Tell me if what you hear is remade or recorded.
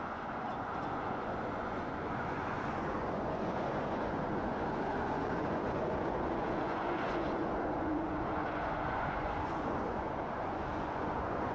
remade